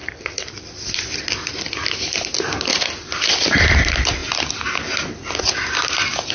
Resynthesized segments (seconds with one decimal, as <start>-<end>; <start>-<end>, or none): 0.0-1.5; 2.7-3.7